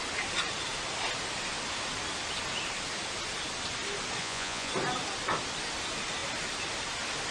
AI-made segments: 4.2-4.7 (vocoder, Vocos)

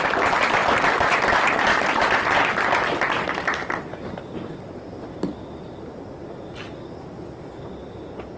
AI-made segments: none

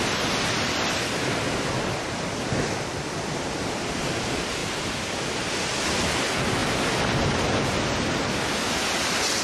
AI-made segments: none